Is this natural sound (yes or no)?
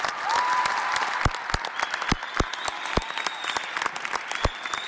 yes